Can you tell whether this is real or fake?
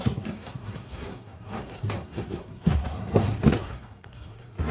fake